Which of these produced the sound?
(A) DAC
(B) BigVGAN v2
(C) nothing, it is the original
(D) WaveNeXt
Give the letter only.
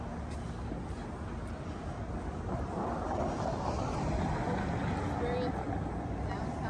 C